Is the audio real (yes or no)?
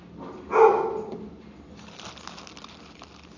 yes